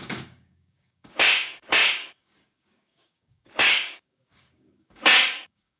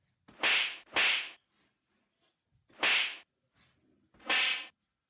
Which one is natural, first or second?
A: second